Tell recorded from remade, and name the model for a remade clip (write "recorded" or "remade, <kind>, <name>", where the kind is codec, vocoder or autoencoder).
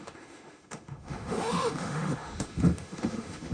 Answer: remade, autoencoder, DAC-VAE